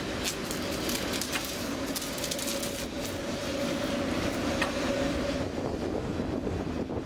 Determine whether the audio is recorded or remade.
recorded